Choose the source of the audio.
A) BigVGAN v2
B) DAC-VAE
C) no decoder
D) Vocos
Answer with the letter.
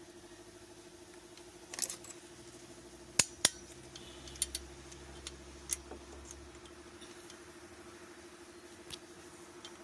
C